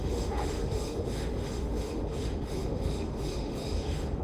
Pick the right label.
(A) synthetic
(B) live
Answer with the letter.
A